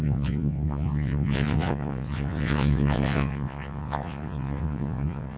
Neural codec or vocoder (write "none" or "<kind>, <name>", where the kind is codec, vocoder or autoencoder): vocoder, WaveNeXt